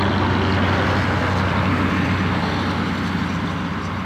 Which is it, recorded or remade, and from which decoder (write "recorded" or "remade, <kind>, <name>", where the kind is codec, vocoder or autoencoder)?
recorded